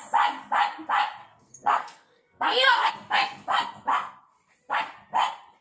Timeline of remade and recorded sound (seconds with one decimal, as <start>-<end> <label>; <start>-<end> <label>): 0.0-1.2 recorded; 1.2-2.9 remade; 2.9-5.6 recorded